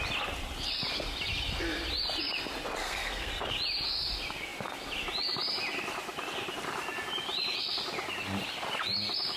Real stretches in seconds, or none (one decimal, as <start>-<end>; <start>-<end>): 0.0-2.8; 3.3-9.4